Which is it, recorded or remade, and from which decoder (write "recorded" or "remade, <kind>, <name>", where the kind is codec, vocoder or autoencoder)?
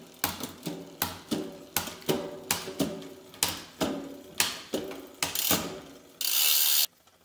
recorded